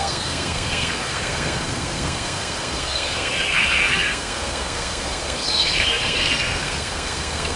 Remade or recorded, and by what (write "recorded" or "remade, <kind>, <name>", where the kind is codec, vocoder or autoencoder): remade, codec, SNAC